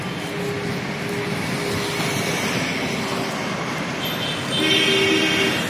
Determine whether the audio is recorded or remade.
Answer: recorded